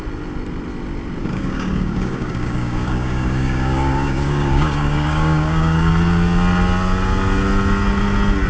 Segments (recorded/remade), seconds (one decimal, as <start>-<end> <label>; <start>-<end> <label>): 0.0-1.2 recorded; 1.2-5.9 remade; 5.9-8.5 recorded

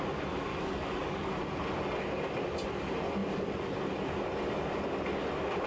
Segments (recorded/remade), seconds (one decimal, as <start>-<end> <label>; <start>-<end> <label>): 0.0-0.5 recorded; 0.5-1.3 remade; 1.3-5.7 recorded

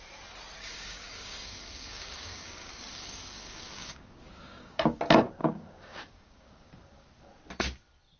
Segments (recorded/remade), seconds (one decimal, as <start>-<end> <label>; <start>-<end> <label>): 0.0-0.7 recorded; 0.7-5.0 remade; 5.0-5.4 recorded; 5.4-6.7 remade; 6.7-8.2 recorded

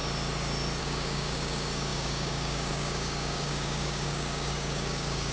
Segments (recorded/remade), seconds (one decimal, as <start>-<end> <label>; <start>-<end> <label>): 0.0-0.8 recorded; 0.8-5.3 remade

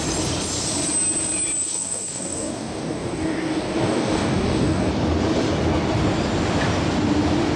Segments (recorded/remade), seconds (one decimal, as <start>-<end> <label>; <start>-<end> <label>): 0.0-1.6 recorded; 1.6-4.9 remade; 4.9-7.6 recorded